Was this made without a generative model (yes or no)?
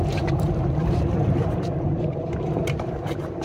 no